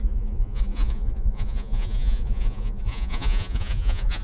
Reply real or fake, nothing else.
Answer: fake